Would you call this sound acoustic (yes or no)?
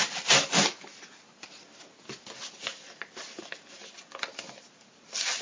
yes